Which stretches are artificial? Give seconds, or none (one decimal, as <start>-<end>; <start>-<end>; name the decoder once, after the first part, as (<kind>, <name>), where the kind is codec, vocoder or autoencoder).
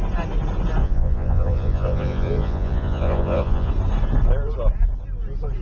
0.8-3.7 (vocoder, Vocos)